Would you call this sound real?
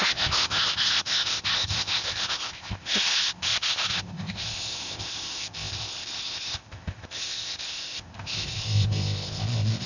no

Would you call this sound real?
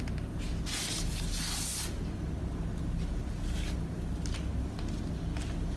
yes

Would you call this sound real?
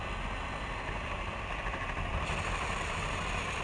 yes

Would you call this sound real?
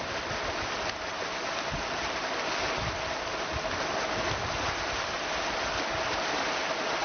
yes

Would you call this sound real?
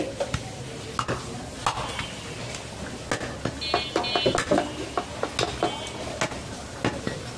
yes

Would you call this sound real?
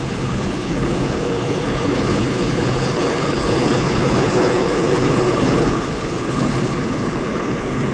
no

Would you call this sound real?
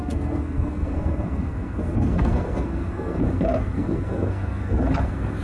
no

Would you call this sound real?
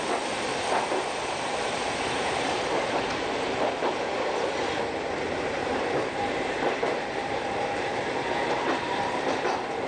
no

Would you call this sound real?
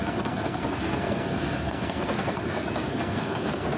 no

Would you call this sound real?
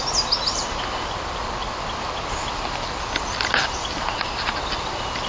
yes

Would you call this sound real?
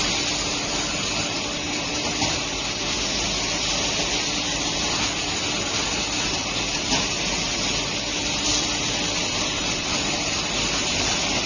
yes